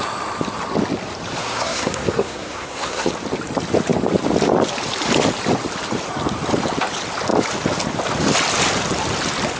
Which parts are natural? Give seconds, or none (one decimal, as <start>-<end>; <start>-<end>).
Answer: 0.0-1.4; 3.1-9.6